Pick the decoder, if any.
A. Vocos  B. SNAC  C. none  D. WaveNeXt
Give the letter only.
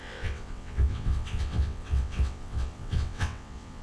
D